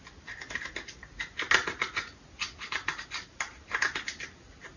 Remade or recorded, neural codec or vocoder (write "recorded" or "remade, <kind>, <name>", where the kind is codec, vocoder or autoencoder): recorded